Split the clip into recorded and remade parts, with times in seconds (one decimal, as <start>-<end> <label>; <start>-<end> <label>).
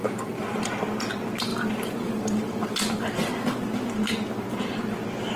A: 0.0-0.7 remade; 0.7-1.5 recorded; 1.5-3.3 remade; 3.3-5.4 recorded